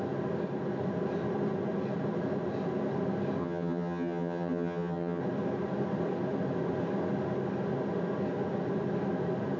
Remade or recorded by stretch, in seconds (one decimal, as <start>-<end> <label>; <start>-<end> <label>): 0.0-3.4 recorded; 3.4-5.2 remade; 5.2-9.6 recorded